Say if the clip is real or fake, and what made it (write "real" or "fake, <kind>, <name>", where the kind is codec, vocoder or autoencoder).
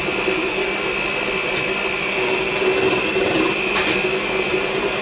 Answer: real